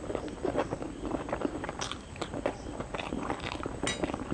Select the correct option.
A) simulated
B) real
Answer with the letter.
B